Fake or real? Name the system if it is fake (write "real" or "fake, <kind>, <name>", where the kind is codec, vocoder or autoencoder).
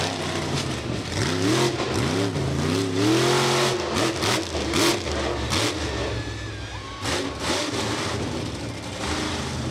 real